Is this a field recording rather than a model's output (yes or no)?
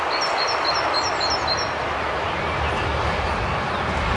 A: yes